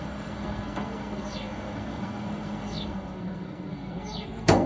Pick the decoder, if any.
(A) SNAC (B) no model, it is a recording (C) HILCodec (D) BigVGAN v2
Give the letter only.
A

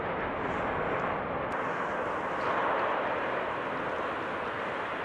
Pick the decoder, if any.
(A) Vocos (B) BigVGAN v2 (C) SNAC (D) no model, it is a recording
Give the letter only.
D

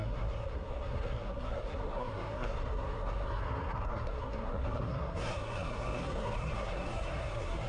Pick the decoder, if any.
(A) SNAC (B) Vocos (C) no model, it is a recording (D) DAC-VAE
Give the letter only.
A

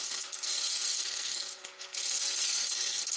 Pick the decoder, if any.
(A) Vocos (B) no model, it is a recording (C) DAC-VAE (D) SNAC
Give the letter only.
D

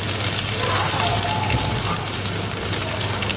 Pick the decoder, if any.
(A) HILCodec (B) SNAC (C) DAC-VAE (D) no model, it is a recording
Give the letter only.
D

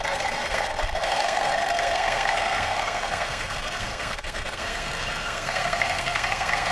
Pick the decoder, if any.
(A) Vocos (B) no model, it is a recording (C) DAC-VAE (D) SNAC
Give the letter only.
D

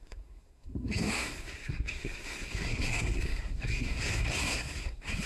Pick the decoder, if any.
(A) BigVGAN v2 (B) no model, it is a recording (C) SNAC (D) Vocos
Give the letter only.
C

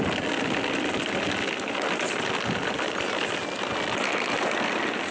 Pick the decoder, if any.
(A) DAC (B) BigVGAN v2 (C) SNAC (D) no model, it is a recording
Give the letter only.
D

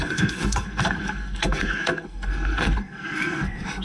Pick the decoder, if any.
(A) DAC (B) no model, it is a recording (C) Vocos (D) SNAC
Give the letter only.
D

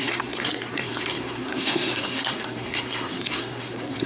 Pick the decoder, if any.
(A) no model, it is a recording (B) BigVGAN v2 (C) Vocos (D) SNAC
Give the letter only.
D